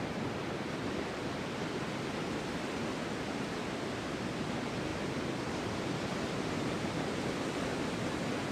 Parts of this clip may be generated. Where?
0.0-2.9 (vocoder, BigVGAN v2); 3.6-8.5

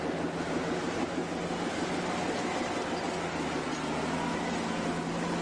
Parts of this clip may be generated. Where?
none

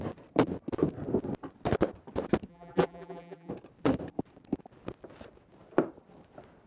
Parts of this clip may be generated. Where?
2.5-3.5 (vocoder, BigVGAN v2)

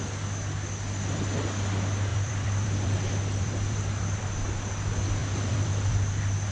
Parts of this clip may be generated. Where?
2.1-4.2 (vocoder, BigVGAN v2); 5.2-6.0

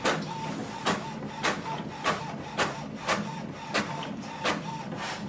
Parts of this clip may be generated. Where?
none

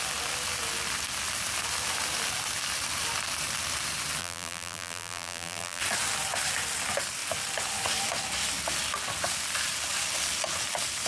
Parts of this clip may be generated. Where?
4.2-5.8 (vocoder, BigVGAN v2)

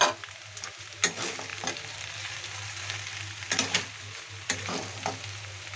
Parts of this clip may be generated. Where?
1.5-4.2 (vocoder, BigVGAN v2)

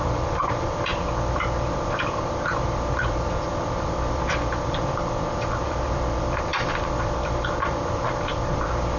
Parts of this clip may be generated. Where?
0.0-9.0 (vocoder, BigVGAN v2)